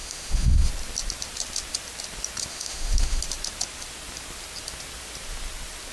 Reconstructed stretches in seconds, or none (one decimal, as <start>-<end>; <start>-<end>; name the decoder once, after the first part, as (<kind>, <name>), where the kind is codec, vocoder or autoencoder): 0.0-0.7 (autoencoder, DAC-VAE); 2.5-3.2